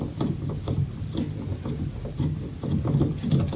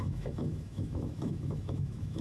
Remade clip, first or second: second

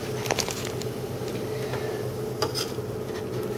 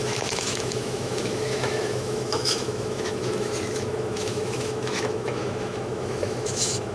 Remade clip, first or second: second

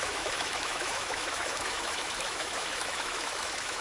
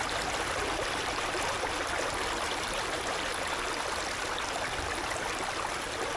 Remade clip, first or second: first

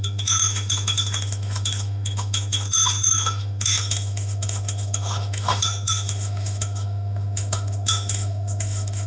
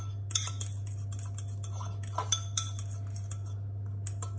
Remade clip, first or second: first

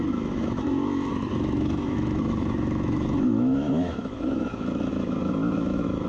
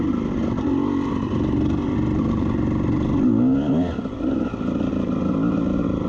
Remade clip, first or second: first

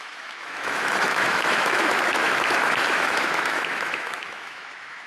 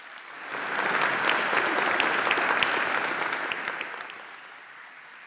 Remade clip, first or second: first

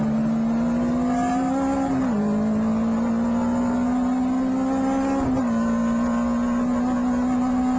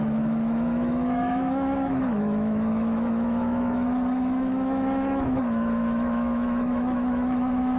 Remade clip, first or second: second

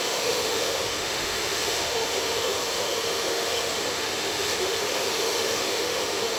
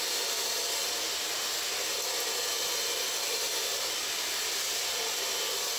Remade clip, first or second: first